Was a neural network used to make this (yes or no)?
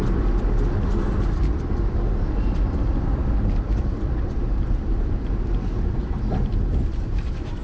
yes